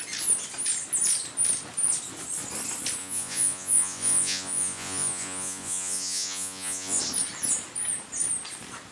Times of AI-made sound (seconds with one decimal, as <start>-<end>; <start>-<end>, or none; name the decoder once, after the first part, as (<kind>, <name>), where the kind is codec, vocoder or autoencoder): 3.0-7.0 (vocoder, Vocos)